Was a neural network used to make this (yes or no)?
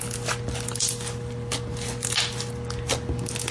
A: no